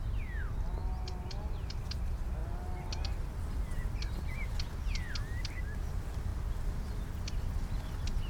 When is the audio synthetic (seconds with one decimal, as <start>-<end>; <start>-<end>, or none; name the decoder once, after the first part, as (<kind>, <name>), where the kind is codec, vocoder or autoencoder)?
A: none